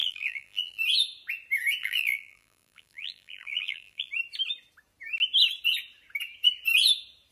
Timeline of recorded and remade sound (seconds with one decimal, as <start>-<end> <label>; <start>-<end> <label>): 0.0-0.8 remade; 0.8-1.8 recorded; 1.8-4.1 remade; 4.1-7.3 recorded